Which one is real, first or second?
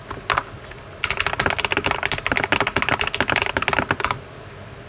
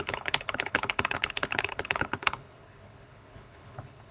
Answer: first